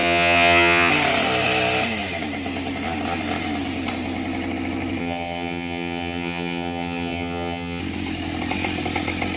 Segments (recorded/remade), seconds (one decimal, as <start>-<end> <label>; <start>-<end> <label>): 0.0-0.9 remade; 0.9-5.0 recorded; 5.0-7.8 remade; 7.8-9.4 recorded